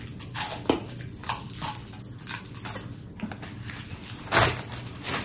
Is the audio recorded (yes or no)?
yes